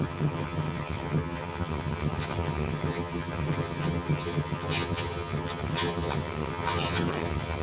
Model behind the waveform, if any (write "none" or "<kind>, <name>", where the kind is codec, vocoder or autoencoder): vocoder, HiFi-GAN